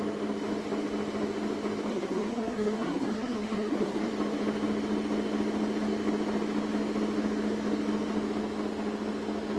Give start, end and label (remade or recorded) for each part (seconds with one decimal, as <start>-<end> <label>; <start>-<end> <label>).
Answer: 0.0-1.9 recorded; 1.9-4.1 remade; 4.1-9.6 recorded